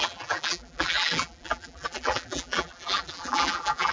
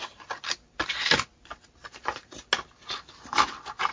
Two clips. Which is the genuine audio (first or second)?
second